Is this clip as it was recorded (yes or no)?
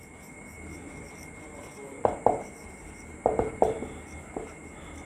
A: yes